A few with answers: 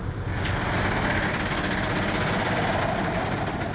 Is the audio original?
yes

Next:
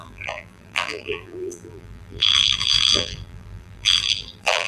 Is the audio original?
no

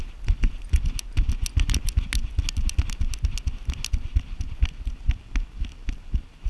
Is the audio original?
yes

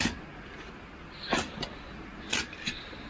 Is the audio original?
yes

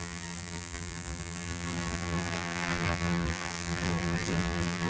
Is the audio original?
no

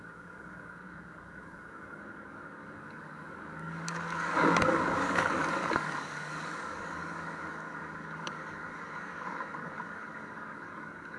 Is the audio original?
no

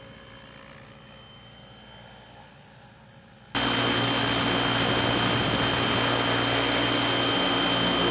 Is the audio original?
yes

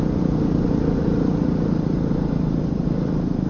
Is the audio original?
yes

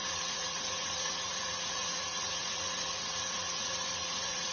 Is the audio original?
no